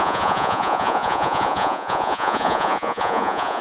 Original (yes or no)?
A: no